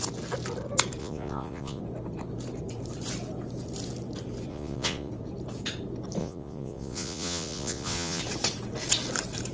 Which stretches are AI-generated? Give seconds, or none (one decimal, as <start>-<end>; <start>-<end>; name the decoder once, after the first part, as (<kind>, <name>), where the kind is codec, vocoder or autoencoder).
1.0-1.8 (vocoder, Vocos); 4.5-5.1; 6.2-8.2